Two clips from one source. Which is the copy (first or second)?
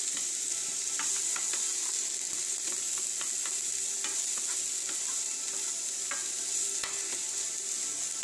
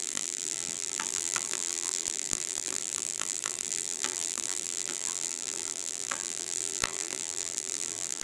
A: second